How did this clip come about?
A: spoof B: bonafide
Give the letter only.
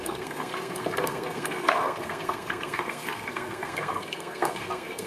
A